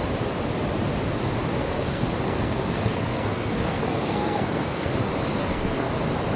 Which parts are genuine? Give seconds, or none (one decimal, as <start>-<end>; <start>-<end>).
0.0-1.6; 4.9-5.4; 5.9-6.4